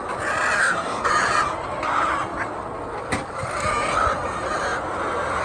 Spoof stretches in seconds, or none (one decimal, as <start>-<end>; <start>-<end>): 0.6-1.1

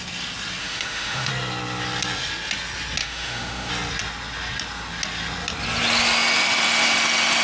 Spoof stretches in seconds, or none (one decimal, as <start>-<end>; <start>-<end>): 0.6-1.3; 3.0-3.7

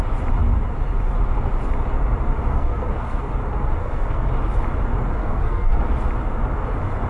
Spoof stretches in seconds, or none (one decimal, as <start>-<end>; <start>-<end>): 2.5-3.3; 3.8-4.3; 5.2-5.8